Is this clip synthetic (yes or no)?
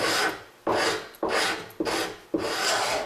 no